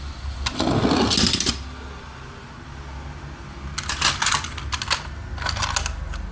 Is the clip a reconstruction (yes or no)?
no